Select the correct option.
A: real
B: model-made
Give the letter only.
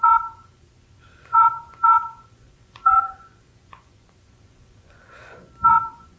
B